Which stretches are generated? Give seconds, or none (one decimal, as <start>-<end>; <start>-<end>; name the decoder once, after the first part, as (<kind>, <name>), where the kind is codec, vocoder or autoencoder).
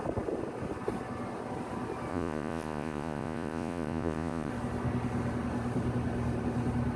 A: 2.1-4.5 (vocoder, Vocos)